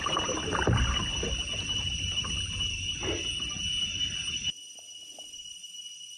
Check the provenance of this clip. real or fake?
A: real